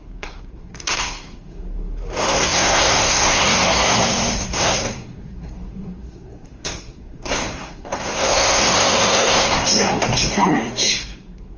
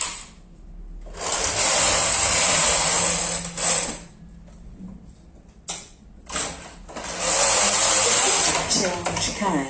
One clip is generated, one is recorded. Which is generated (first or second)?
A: first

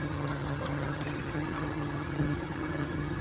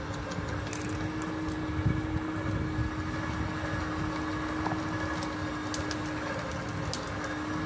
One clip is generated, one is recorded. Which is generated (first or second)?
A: first